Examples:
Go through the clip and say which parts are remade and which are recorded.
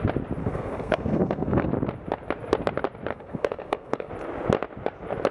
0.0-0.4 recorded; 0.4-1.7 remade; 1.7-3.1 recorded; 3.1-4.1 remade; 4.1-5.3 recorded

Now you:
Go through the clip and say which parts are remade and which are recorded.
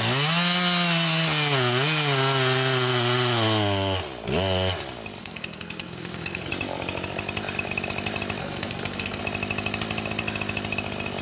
0.0-5.2 recorded; 5.2-6.5 remade; 6.5-8.4 recorded; 8.4-9.2 remade; 9.2-11.2 recorded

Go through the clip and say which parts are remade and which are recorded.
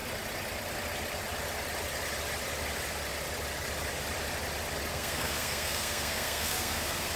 0.0-4.9 recorded; 4.9-7.2 remade